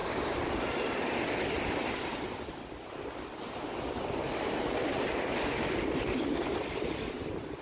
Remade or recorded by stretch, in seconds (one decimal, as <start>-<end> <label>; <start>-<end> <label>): 0.0-7.6 recorded